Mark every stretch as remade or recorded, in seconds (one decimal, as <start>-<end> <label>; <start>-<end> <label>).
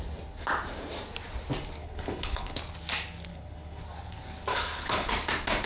0.0-1.8 recorded; 1.8-2.6 remade; 2.6-3.3 recorded; 3.3-3.8 remade; 3.8-4.5 recorded; 4.5-5.1 remade; 5.1-5.7 recorded